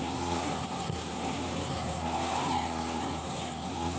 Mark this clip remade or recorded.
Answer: remade